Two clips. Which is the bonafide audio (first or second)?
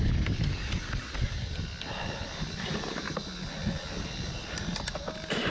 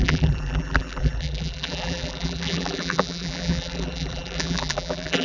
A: first